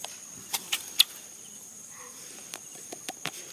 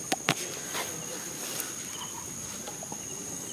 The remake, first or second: first